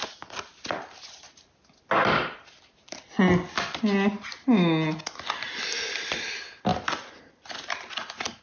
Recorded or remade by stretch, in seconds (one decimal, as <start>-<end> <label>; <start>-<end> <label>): 0.0-8.4 recorded